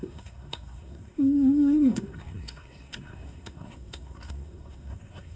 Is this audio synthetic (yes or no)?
yes